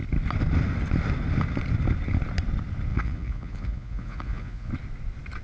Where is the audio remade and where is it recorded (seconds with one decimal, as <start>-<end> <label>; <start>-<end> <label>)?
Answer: 0.0-2.9 recorded; 2.9-4.7 remade; 4.7-5.4 recorded